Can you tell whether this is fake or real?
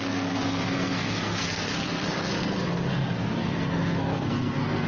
fake